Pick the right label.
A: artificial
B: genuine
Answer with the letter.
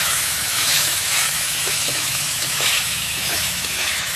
A